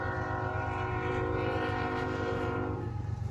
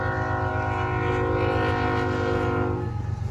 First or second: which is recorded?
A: second